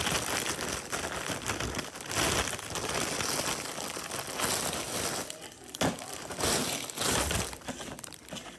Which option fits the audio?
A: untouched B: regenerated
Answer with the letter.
A